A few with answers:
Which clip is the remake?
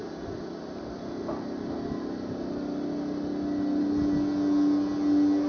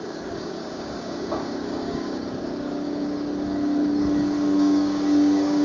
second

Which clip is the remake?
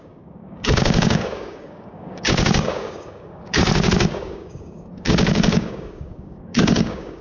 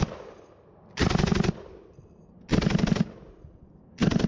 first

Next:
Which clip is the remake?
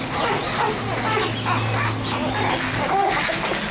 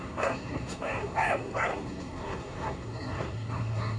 second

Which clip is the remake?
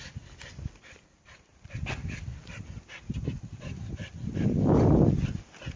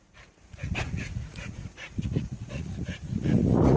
second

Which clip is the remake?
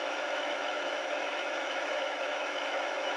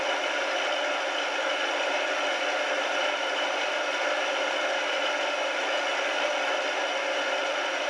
first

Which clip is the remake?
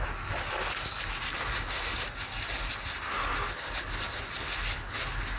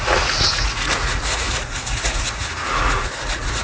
second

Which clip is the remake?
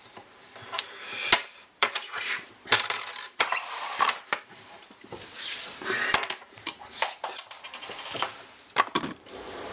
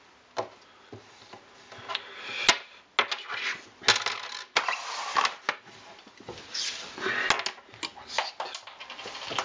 first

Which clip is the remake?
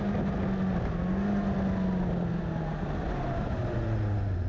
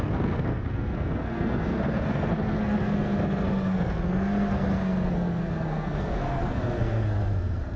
second